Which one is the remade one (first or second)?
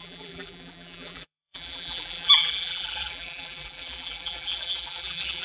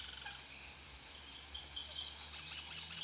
first